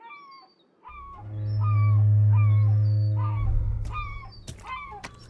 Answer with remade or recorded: recorded